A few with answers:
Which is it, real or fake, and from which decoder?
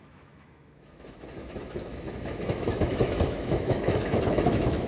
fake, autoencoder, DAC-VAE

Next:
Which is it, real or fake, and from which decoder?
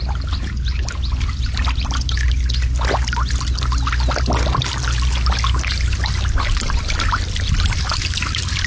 real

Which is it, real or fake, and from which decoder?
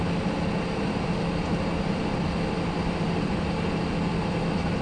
real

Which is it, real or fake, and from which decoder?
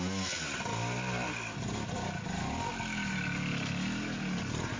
real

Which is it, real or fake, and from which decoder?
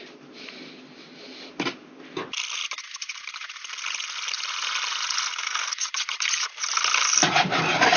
real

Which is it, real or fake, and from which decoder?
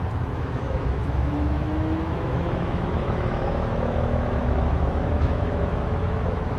fake, autoencoder, DAC-VAE